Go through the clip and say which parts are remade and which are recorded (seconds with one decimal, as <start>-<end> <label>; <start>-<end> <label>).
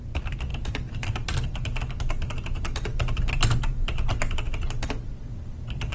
0.0-0.5 recorded; 0.5-4.0 remade; 4.0-5.9 recorded